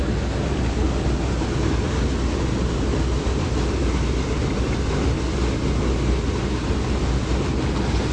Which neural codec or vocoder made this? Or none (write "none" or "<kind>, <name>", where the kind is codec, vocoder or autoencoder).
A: none